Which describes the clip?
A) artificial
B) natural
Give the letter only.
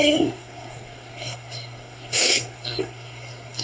A